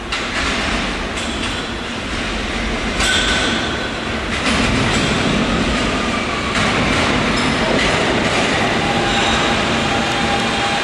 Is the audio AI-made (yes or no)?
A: no